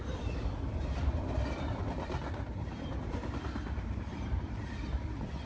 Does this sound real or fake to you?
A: fake